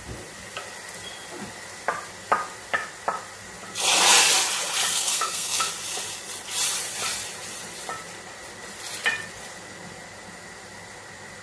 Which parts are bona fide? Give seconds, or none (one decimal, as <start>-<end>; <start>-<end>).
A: 0.0-4.9; 5.7-11.4